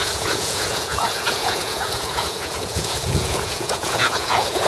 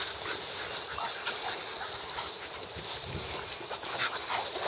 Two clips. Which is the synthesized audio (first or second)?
first